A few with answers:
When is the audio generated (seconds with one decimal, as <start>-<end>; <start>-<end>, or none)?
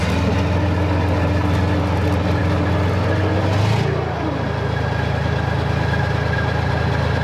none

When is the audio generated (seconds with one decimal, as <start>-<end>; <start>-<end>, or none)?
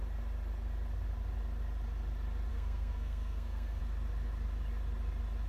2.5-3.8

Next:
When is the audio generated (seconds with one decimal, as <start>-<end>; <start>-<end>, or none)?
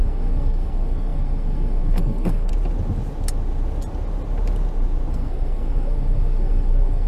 0.0-2.5; 5.1-7.1